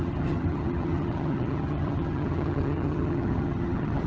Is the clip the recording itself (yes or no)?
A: no